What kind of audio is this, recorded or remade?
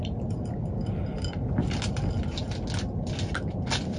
recorded